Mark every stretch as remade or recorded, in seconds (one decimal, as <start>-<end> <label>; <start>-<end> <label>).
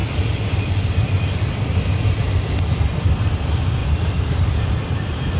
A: 0.0-3.2 remade; 3.2-3.8 recorded; 3.8-4.7 remade; 4.7-5.4 recorded